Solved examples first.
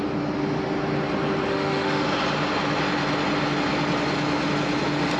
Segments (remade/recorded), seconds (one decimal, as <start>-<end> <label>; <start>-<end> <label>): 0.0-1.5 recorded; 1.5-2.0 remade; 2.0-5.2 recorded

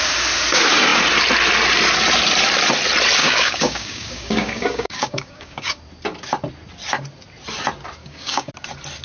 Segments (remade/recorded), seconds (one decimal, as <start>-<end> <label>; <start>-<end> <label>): 0.0-3.2 recorded; 3.2-5.8 remade; 5.8-8.0 recorded; 8.0-8.5 remade; 8.5-9.0 recorded

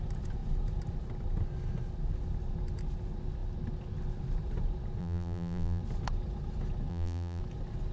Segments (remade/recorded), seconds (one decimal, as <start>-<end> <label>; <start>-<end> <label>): 0.0-5.0 recorded; 5.0-5.8 remade; 5.8-6.9 recorded; 6.9-7.4 remade; 7.4-7.9 recorded

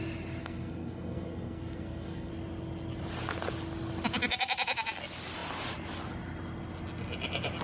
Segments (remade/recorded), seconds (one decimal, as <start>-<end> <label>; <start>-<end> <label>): 0.0-0.4 recorded; 0.4-2.3 remade; 2.3-7.6 recorded